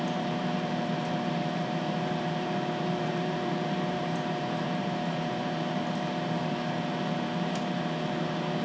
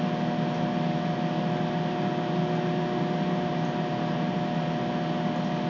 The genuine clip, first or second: second